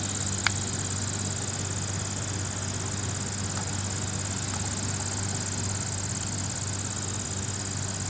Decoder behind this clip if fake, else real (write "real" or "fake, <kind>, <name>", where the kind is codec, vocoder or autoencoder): real